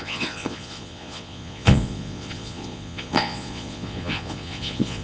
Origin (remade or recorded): remade